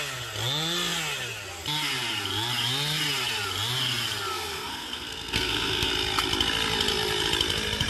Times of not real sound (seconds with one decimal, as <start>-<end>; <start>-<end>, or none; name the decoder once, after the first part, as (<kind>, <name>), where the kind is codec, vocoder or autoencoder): 4.3-5.9 (codec, SNAC)